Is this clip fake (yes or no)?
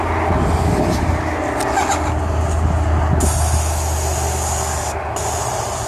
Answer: no